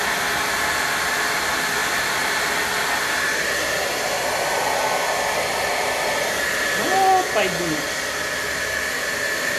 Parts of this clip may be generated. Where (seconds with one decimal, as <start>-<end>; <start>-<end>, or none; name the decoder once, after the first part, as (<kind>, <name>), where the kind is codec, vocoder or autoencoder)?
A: none